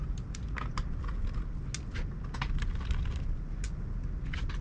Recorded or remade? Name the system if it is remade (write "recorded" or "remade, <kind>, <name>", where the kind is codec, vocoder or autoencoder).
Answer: recorded